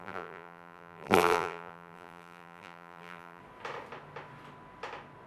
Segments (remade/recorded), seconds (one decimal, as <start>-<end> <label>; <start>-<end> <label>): 0.0-3.4 remade; 3.4-5.3 recorded